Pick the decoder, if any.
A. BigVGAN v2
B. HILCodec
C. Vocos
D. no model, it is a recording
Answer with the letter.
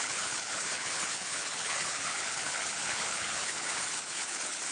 B